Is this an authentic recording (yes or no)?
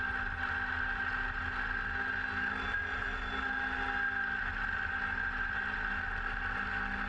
yes